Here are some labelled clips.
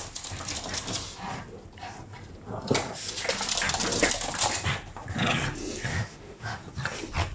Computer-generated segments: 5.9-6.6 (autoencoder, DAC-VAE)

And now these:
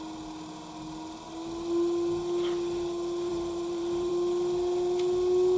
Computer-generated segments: 3.3-4.1 (vocoder, BigVGAN v2)